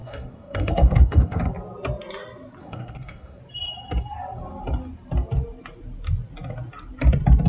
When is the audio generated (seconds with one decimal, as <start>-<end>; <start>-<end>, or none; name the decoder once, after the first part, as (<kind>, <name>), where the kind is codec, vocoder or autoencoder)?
0.0-1.4 (codec, SNAC); 2.6-3.4

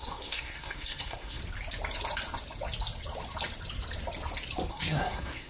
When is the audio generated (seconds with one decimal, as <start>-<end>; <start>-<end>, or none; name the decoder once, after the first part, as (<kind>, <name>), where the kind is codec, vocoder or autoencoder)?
0.0-1.4 (codec, SNAC); 4.7-5.5

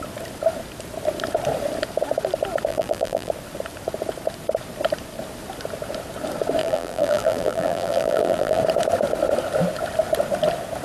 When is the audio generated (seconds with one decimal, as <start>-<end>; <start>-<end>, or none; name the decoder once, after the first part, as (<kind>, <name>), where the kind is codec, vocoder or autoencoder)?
2.7-3.3 (vocoder, BigVGAN v2); 6.6-8.6

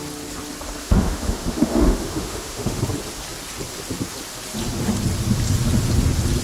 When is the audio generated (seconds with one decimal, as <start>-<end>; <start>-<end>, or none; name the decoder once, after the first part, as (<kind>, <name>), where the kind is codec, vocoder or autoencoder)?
0.8-2.8 (autoencoder, DAC-VAE)